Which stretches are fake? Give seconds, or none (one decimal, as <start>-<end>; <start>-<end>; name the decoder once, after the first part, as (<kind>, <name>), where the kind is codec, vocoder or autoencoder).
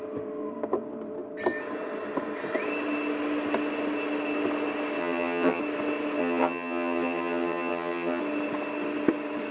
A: 5.0-5.6 (vocoder, HiFi-GAN); 6.2-8.2